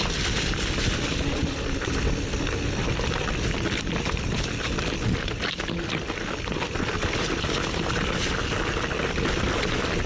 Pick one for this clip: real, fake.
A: real